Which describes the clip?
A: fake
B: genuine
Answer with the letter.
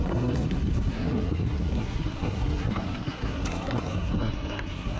A